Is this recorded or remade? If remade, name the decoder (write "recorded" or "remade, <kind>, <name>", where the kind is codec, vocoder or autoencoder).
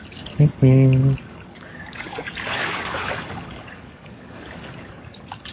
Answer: remade, codec, DAC